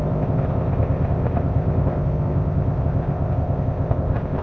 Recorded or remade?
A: remade